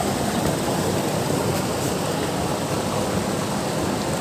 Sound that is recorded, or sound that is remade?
recorded